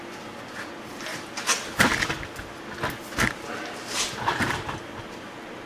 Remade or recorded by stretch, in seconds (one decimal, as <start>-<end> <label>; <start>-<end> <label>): 0.0-5.7 recorded